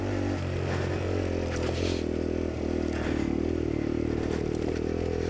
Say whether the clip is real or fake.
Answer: real